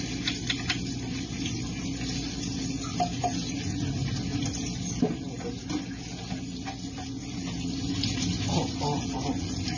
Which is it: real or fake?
real